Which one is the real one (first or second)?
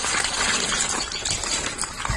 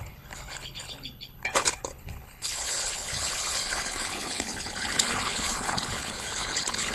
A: first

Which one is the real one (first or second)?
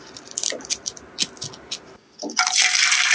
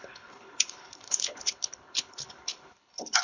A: first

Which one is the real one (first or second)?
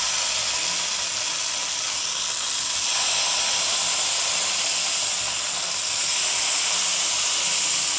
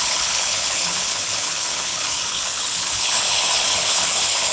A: first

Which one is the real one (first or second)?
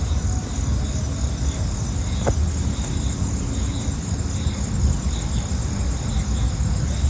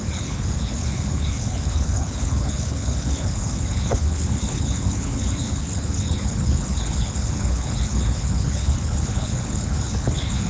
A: first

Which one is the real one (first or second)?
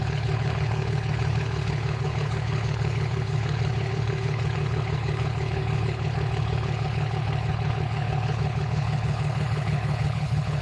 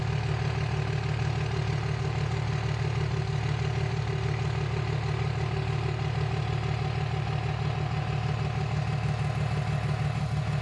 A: second